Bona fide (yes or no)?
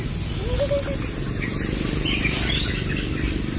yes